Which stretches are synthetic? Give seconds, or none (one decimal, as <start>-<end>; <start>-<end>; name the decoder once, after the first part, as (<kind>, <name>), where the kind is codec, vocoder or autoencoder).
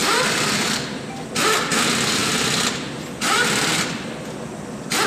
none